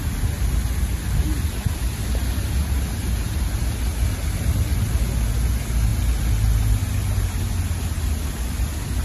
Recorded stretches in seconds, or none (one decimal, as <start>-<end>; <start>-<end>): 0.0-9.0